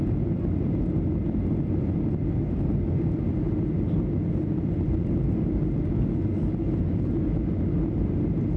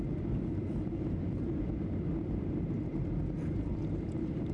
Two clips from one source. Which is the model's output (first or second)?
second